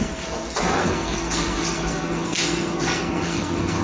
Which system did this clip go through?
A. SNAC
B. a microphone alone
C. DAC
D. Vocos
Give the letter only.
A